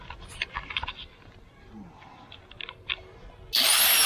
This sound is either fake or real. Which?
real